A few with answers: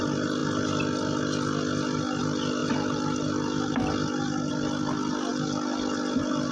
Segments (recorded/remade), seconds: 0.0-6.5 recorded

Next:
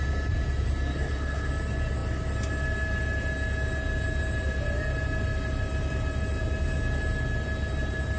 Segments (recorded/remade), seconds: 0.0-0.9 recorded; 0.9-1.5 remade; 1.5-8.2 recorded